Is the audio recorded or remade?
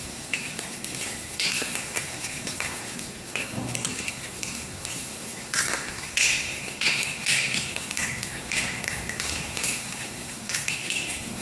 remade